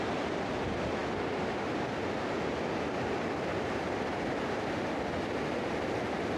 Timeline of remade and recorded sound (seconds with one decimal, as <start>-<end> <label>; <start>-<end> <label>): 0.0-6.4 recorded